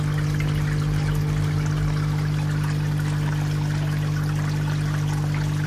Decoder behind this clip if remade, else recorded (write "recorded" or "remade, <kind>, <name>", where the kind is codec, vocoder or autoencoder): recorded